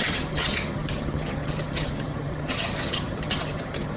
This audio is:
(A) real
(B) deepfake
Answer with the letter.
B